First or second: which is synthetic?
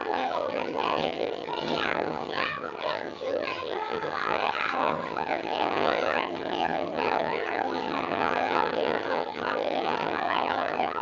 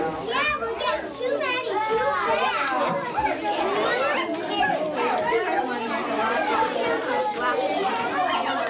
first